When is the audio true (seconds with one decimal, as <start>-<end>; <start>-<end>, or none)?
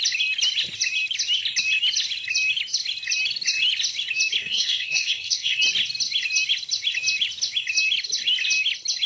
0.0-4.4; 5.6-9.1